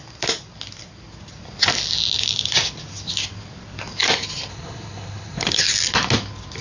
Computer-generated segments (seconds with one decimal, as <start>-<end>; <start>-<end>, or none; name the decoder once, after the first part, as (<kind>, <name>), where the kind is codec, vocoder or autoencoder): 4.5-5.6 (codec, HILCodec)